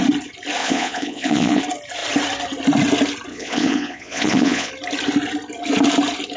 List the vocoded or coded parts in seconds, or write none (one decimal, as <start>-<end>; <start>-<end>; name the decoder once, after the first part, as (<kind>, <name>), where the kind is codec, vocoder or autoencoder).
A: 0.6-1.6 (vocoder, Vocos); 3.3-4.7